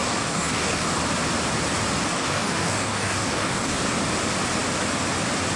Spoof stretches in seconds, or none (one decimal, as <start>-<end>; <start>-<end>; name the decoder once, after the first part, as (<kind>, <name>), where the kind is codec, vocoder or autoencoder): 0.0-1.0 (codec, DAC); 2.1-3.8